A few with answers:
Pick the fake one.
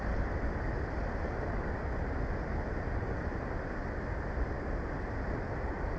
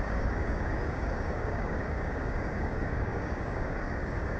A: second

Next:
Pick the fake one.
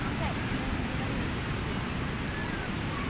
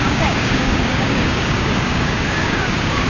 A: second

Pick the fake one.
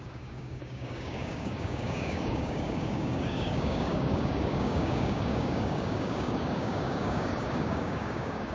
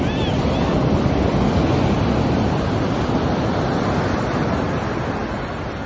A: first